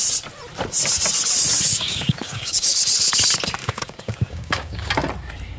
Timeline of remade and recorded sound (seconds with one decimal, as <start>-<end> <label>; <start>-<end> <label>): 0.0-1.7 recorded; 1.7-2.8 remade; 2.8-3.6 recorded; 3.6-4.9 remade; 4.9-5.6 recorded